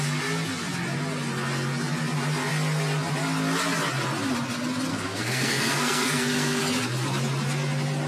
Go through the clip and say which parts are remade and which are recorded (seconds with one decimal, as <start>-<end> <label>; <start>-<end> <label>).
0.0-4.9 recorded; 4.9-6.6 remade; 6.6-8.1 recorded